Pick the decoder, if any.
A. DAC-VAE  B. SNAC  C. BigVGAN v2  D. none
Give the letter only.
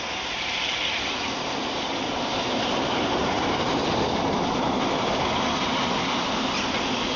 D